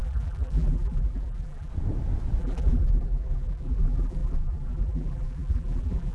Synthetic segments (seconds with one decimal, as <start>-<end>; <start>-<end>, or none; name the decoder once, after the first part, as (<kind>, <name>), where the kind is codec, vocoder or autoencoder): 0.0-1.7 (vocoder, BigVGAN v2); 2.4-6.1